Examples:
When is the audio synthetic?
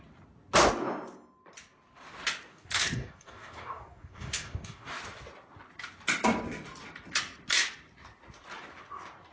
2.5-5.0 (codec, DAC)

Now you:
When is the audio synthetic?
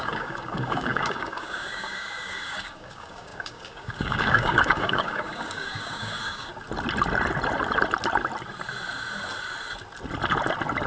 0.0-6.5 (codec, DAC)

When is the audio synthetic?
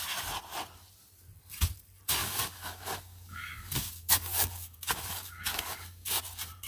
2.2-6.2 (codec, DAC)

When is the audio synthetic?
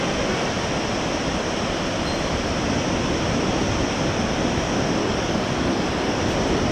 5.0-6.2 (codec, DAC)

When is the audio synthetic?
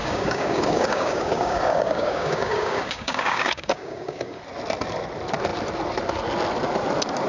0.0-4.4 (codec, DAC)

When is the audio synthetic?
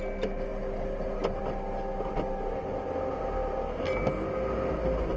none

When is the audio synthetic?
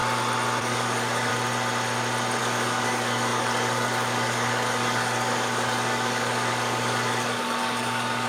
0.6-1.3 (codec, DAC); 2.4-8.3